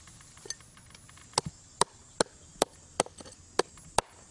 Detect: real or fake real